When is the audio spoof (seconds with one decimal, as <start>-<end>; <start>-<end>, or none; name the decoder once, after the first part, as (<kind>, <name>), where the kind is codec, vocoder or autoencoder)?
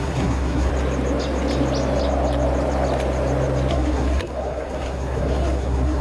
0.0-0.7 (codec, SNAC); 3.7-6.0